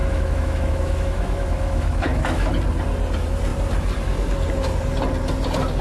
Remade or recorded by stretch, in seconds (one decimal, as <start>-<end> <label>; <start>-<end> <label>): 0.0-2.5 remade; 2.5-5.8 recorded